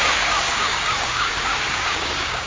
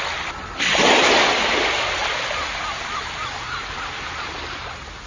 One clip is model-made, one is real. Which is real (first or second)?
second